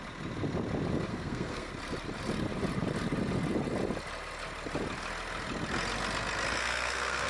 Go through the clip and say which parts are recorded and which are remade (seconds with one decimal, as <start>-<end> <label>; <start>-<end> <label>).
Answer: 0.0-1.1 recorded; 1.1-1.7 remade; 1.7-6.6 recorded; 6.6-7.3 remade